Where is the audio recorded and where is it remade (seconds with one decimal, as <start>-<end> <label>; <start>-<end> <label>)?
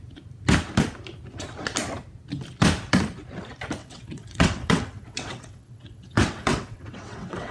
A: 0.0-3.8 recorded; 3.8-7.5 remade